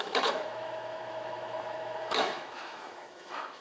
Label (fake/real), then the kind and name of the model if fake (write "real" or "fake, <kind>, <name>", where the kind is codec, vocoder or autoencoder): fake, autoencoder, DAC-VAE